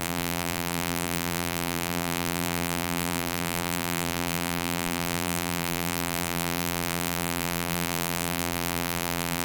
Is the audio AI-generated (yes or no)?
yes